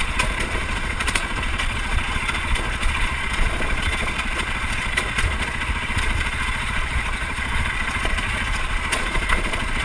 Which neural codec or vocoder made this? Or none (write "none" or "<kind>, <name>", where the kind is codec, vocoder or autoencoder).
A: vocoder, Vocos